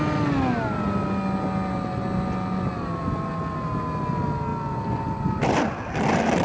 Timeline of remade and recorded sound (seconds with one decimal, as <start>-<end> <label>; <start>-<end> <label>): 0.0-6.4 recorded